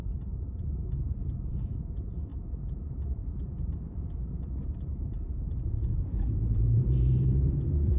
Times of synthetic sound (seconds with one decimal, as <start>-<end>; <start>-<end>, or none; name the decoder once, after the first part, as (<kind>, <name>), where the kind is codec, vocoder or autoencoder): 0.0-8.0 (vocoder, Vocos)